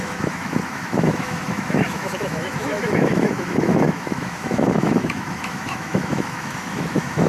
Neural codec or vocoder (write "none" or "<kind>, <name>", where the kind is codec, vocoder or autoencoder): autoencoder, DAC-VAE